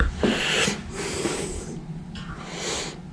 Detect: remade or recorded recorded